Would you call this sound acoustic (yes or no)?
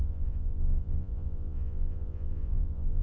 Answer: no